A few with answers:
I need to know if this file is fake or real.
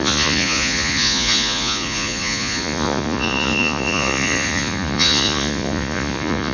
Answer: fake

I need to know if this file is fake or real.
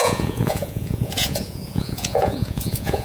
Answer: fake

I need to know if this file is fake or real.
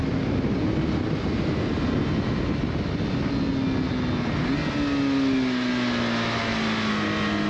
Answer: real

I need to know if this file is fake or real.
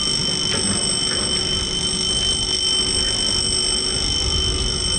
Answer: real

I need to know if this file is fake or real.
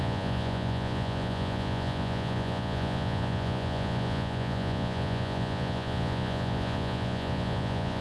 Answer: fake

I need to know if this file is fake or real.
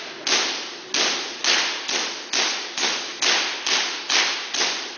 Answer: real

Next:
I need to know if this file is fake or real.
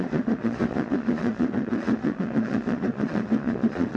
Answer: fake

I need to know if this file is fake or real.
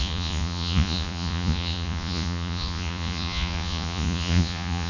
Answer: fake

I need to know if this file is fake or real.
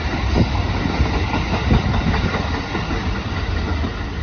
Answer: real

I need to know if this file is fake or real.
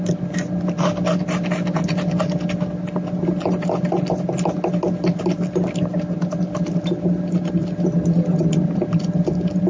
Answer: real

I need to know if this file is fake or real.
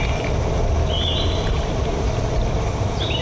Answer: real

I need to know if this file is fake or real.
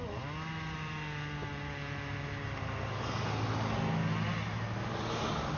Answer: real